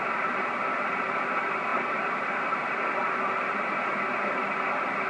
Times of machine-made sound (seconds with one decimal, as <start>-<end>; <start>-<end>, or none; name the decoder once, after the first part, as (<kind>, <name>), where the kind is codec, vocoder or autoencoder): none

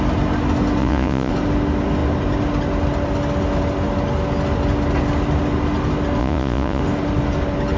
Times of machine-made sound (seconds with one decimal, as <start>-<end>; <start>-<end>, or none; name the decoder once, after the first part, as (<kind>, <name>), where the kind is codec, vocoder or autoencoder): 0.8-1.3 (vocoder, Vocos); 6.2-6.8

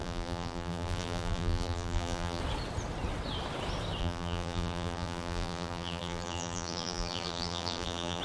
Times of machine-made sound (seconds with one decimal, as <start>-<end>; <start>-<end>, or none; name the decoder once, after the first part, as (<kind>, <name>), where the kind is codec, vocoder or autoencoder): 0.0-2.4 (vocoder, BigVGAN v2); 4.0-8.2